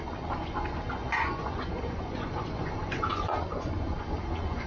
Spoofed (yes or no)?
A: yes